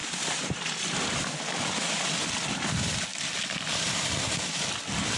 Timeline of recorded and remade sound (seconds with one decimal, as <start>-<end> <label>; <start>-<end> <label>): 0.0-2.2 remade; 2.2-3.1 recorded; 3.1-4.6 remade; 4.6-5.2 recorded